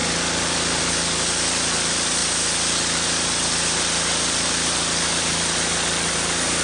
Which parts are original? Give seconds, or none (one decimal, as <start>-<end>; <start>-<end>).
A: 0.0-6.6